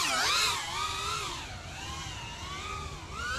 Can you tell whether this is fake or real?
real